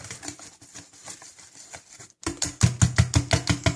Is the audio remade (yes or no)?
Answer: no